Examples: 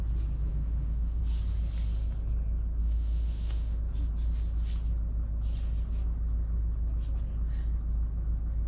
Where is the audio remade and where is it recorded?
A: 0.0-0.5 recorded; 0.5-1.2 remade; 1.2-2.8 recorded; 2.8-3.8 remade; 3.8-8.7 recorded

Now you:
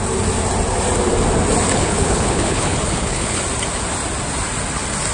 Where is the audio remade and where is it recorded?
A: 0.0-1.7 recorded; 1.7-3.4 remade; 3.4-5.1 recorded

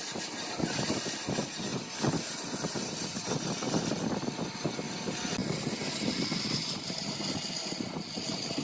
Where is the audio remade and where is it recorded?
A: 0.0-8.6 recorded